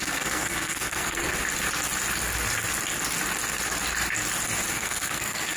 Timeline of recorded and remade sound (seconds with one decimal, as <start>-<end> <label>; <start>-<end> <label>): 0.0-1.3 remade; 1.3-4.7 recorded; 4.7-5.6 remade